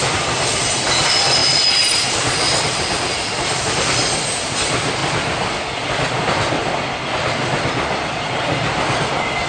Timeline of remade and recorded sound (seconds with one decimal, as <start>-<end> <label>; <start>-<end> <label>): 0.0-1.4 recorded; 1.4-3.9 remade; 3.9-9.5 recorded